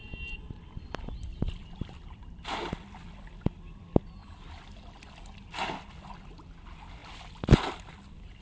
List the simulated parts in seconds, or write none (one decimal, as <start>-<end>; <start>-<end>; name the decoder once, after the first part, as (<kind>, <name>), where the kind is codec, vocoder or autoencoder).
none